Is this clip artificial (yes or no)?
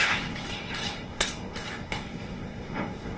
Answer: yes